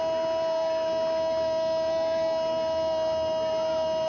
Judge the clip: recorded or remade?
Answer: recorded